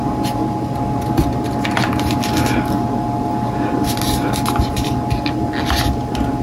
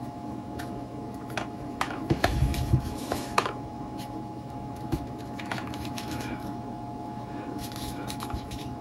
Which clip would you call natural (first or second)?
first